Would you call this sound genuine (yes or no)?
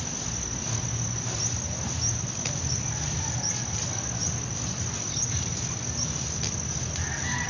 yes